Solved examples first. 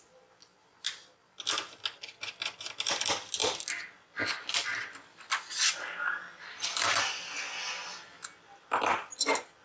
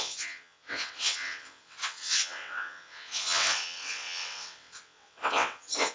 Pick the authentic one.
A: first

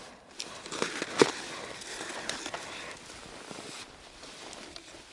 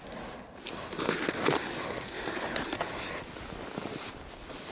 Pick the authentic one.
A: second